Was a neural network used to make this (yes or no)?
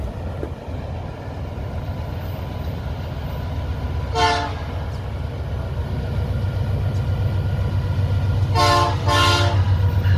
no